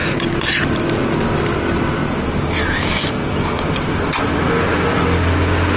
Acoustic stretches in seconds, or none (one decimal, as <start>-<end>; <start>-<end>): 0.0-5.8